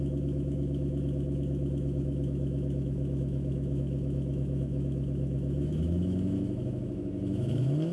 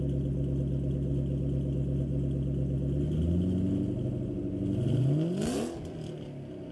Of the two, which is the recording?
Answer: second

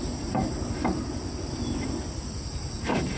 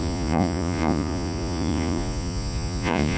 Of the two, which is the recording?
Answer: first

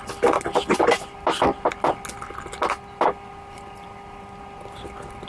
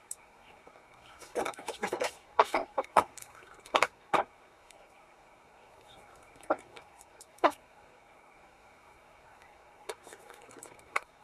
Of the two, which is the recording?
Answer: first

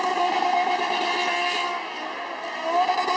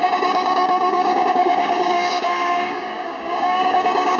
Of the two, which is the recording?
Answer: first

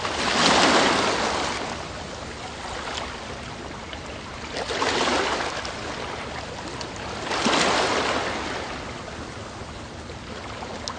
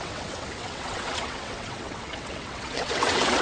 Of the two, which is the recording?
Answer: first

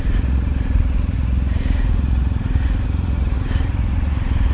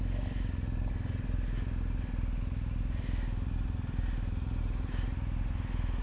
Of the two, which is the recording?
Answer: second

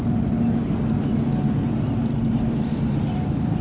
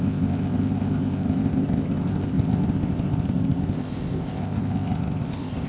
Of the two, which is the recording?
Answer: first